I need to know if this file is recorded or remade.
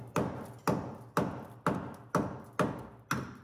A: recorded